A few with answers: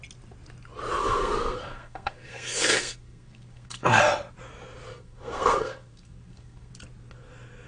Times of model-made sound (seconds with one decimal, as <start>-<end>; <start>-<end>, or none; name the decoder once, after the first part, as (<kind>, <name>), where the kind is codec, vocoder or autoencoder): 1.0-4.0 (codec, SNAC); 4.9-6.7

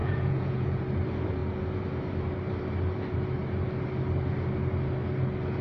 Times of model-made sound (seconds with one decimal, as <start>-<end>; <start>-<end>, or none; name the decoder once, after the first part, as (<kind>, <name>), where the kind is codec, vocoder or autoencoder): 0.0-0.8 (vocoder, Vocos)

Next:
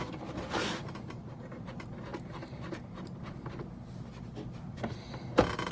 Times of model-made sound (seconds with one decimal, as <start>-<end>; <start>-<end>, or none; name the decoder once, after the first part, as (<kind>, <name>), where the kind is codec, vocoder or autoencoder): none

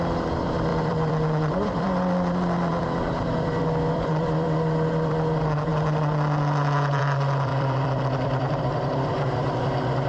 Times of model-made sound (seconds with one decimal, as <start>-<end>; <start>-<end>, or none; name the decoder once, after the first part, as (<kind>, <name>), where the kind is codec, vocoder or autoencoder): 0.0-5.7 (vocoder, BigVGAN v2); 7.0-10.1

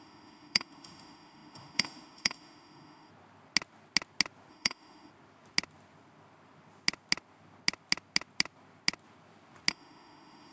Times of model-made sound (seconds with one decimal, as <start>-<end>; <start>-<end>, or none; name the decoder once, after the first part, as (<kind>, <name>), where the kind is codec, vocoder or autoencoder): 0.0-3.1 (autoencoder, DAC-VAE); 4.5-5.1; 9.7-10.5

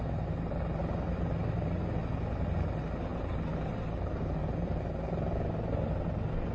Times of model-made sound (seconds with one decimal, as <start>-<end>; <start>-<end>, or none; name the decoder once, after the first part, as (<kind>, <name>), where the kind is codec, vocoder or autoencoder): none

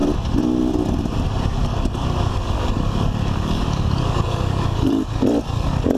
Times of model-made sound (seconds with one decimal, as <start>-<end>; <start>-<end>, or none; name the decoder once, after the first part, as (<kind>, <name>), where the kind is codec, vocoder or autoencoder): 1.6-5.2 (codec, DAC)

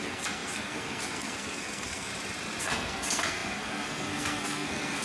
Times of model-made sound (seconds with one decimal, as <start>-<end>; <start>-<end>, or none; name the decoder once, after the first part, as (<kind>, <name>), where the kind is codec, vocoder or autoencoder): 0.0-2.1 (codec, SNAC); 2.6-5.0